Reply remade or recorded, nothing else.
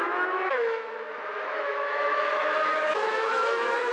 remade